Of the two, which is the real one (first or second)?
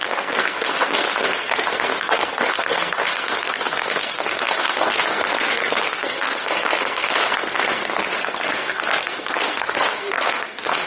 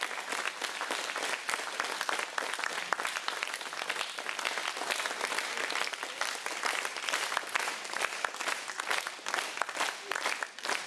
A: second